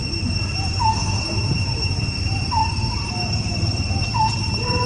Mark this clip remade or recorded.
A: remade